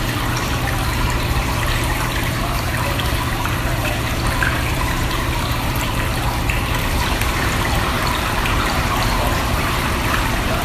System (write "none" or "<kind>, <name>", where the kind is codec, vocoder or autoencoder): vocoder, BigVGAN v2